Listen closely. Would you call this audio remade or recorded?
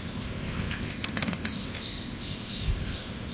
remade